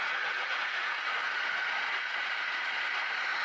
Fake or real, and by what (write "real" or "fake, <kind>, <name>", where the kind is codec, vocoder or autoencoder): fake, vocoder, Vocos